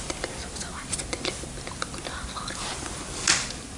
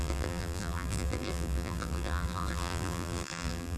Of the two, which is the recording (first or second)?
first